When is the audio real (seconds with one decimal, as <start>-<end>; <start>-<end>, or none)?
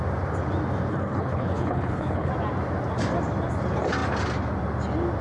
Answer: 0.0-0.9; 2.3-5.2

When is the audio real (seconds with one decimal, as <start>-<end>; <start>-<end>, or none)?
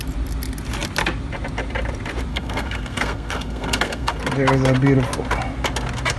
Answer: 0.0-2.3; 4.2-6.2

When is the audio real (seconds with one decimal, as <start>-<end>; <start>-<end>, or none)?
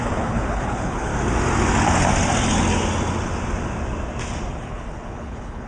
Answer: 1.1-4.5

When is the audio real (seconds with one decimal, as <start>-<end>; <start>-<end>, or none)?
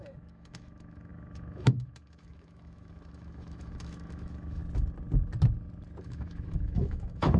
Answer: 4.6-6.0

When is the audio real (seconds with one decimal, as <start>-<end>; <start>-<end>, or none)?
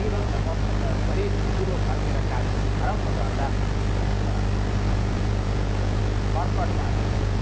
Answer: 0.5-4.9; 6.0-6.7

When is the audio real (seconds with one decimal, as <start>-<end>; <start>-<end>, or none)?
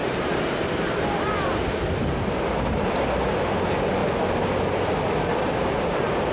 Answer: 0.0-6.3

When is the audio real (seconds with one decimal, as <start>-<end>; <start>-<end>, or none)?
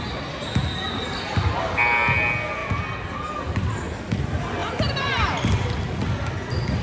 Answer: 0.0-2.6; 4.0-4.6; 6.3-6.8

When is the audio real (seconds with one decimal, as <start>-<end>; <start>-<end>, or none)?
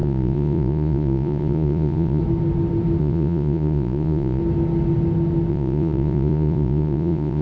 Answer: 2.2-3.0; 4.4-5.5